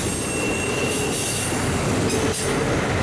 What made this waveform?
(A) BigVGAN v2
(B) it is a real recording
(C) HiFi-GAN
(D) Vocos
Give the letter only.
B